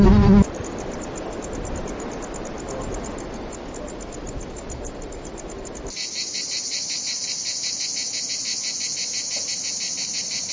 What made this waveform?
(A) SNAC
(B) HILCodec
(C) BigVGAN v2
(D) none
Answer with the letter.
D